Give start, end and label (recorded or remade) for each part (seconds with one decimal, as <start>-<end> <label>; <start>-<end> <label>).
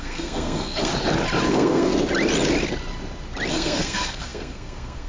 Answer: 0.0-0.9 remade; 0.9-1.5 recorded; 1.5-1.9 remade; 1.9-3.5 recorded; 3.5-5.1 remade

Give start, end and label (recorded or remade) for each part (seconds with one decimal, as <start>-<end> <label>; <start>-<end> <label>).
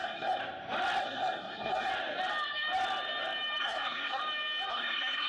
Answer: 0.0-0.4 remade; 0.4-1.0 recorded; 1.0-1.9 remade; 1.9-3.6 recorded; 3.6-4.2 remade; 4.2-4.7 recorded; 4.7-5.3 remade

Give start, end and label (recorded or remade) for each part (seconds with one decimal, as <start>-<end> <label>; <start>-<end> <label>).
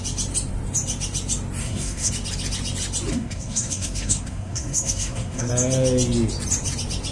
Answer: 0.0-1.6 recorded; 1.6-2.1 remade; 2.1-3.1 recorded; 3.1-5.5 remade; 5.5-7.1 recorded